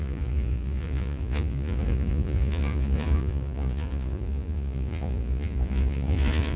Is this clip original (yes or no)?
no